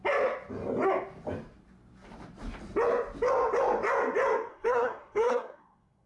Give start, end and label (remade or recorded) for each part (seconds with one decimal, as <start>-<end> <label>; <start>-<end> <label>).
0.0-4.5 recorded; 4.5-6.1 remade